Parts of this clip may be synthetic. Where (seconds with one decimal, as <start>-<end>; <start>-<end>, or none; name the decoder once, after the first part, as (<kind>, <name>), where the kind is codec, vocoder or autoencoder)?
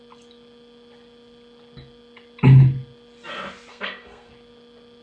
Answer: 3.7-4.3 (codec, SNAC)